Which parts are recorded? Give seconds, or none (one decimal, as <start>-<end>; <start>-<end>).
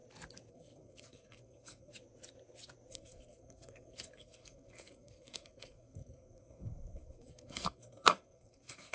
0.0-0.5; 1.9-2.9